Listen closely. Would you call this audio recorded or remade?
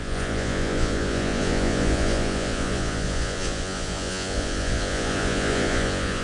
remade